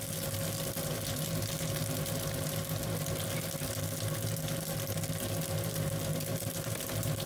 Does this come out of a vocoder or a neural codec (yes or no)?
no